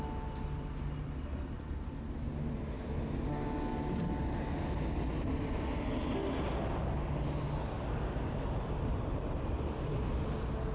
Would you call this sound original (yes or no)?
yes